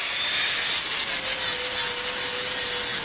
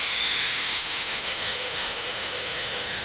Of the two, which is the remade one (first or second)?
second